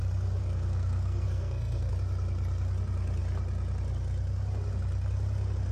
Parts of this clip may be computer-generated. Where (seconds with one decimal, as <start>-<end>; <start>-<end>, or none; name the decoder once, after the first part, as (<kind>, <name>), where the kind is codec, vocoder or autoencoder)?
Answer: 0.4-1.9 (codec, SNAC)